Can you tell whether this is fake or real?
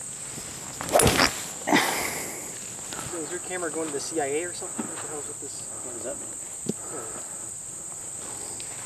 real